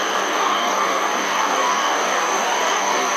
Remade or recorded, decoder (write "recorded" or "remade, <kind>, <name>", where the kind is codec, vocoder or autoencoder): remade, codec, DAC